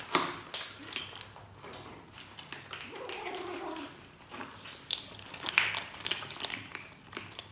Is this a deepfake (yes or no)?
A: yes